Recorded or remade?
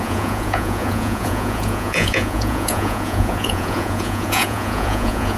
remade